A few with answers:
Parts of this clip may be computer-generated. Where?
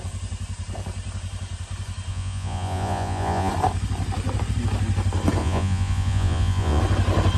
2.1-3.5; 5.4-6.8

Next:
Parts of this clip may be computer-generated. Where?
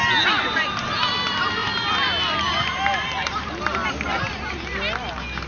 1.6-4.4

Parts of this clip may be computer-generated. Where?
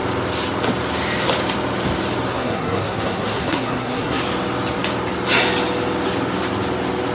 2.3-4.2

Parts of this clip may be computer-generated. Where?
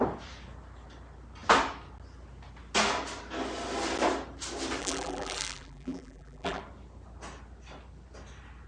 4.8-6.6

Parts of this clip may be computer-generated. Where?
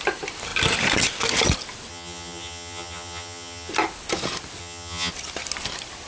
1.9-3.7; 4.6-5.1